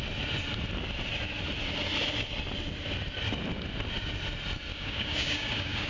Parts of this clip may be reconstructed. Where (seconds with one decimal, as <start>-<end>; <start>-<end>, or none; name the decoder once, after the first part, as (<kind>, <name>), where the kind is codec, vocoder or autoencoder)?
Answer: 4.7-5.9 (codec, DAC)